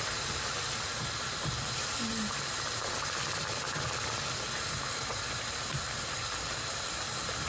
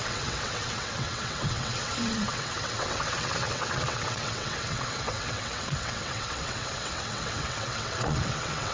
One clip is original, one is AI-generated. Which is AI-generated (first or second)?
second